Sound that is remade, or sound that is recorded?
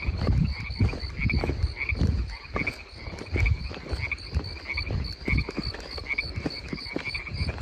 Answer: recorded